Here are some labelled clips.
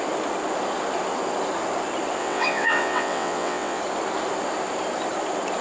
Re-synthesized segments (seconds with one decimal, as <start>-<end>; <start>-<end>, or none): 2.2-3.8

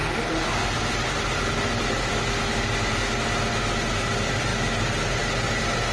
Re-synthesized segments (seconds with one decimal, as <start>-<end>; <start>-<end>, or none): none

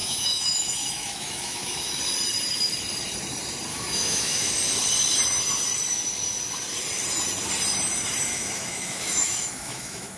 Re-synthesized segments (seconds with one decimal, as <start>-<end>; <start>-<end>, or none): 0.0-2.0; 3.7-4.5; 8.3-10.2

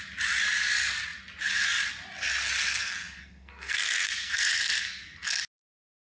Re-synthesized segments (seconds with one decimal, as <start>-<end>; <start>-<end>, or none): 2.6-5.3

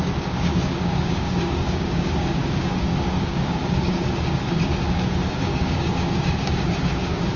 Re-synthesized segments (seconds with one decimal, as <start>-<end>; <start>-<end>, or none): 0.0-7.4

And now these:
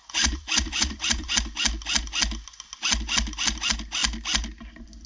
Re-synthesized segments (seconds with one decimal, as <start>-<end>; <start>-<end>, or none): 0.0-1.3

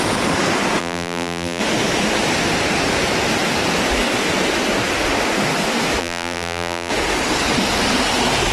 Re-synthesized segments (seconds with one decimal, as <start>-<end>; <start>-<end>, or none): 0.8-1.6; 6.0-6.9